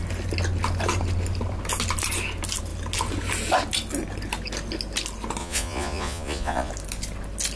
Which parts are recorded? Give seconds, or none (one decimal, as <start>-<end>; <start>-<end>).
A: 0.0-5.4; 6.7-7.6